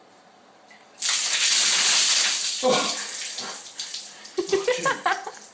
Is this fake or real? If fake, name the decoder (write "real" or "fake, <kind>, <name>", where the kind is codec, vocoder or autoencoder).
real